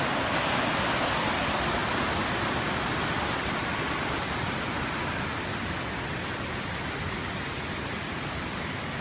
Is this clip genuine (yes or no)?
yes